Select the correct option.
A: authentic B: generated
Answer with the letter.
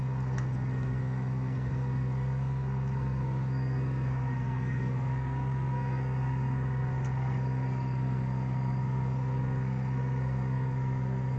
B